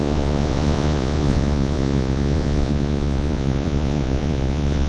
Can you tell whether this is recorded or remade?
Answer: remade